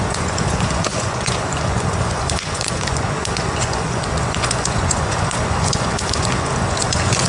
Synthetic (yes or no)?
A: yes